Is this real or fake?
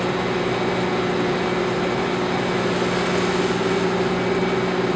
real